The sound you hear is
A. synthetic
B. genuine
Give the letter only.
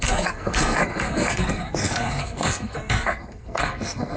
A